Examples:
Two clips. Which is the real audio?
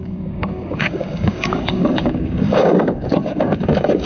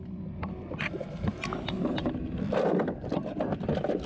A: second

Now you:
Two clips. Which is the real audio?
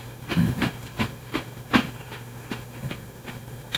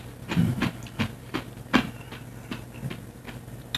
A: second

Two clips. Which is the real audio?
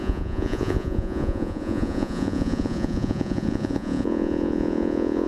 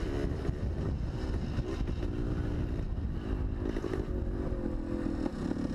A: second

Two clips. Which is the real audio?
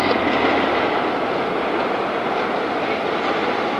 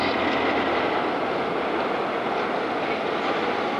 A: second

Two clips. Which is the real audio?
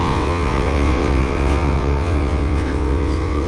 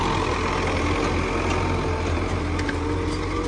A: second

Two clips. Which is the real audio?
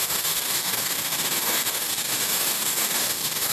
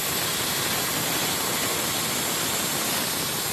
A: second